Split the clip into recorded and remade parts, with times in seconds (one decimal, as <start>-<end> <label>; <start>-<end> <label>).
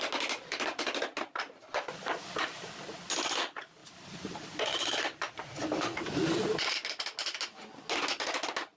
0.0-3.8 recorded; 3.8-6.3 remade; 6.3-8.8 recorded